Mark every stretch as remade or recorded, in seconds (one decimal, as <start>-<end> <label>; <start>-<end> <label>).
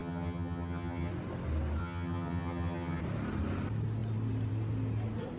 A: 0.0-1.1 remade; 1.1-1.8 recorded; 1.8-3.0 remade; 3.0-5.4 recorded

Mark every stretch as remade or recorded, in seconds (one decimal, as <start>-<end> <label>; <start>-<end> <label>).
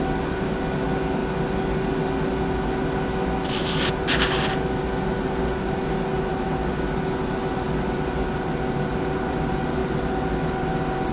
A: 0.0-11.1 recorded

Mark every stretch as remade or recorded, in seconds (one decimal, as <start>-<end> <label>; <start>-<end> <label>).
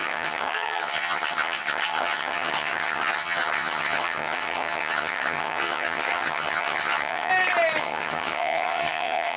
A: 0.0-7.3 remade; 7.3-7.8 recorded; 7.8-9.4 remade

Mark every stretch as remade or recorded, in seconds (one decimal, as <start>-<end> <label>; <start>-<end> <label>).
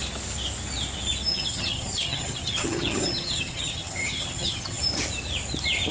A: 0.0-1.3 recorded; 1.3-4.8 remade; 4.8-5.9 recorded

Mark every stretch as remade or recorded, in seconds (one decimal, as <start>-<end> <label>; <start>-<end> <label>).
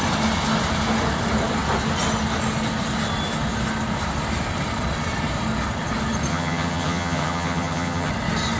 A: 0.0-6.3 recorded; 6.3-8.1 remade; 8.1-8.6 recorded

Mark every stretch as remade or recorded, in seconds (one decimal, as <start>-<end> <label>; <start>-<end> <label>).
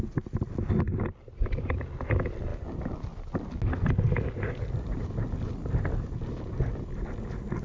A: 0.0-7.6 recorded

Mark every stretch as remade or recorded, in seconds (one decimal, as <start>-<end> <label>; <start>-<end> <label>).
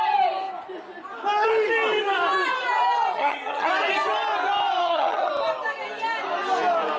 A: 0.0-3.1 recorded; 3.1-3.7 remade; 3.7-4.8 recorded; 4.8-5.3 remade; 5.3-7.0 recorded